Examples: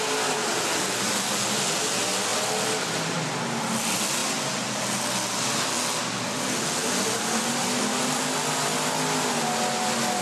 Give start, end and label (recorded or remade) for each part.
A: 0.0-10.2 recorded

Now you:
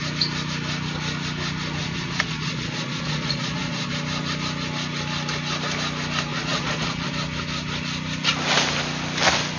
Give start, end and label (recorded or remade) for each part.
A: 0.0-1.8 recorded; 1.8-3.9 remade; 3.9-6.3 recorded; 6.3-7.1 remade; 7.1-9.6 recorded

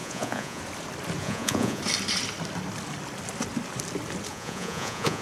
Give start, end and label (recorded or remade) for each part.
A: 0.0-0.6 remade; 0.6-1.2 recorded; 1.2-1.8 remade; 1.8-4.3 recorded; 4.3-5.2 remade